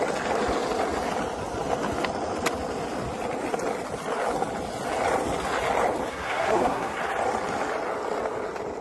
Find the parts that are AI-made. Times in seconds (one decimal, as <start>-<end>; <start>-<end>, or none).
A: 6.1-7.0